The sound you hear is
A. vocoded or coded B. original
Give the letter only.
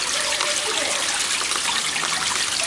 B